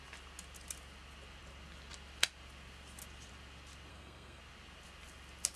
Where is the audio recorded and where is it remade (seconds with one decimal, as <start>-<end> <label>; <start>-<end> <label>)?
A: 0.0-3.9 recorded; 3.9-4.4 remade; 4.4-5.6 recorded